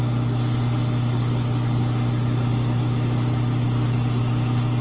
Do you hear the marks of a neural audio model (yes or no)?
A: no